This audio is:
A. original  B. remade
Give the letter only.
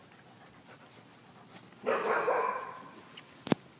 A